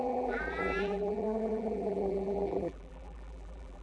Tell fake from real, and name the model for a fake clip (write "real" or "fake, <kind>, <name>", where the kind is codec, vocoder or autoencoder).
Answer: fake, vocoder, BigVGAN v2